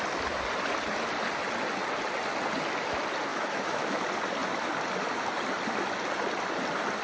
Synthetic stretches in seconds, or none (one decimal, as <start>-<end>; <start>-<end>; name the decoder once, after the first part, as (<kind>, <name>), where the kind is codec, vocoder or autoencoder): 3.3-4.0 (autoencoder, DAC-VAE)